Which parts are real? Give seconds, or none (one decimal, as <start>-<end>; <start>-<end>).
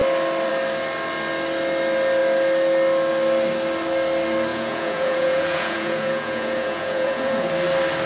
0.0-4.5; 7.5-8.1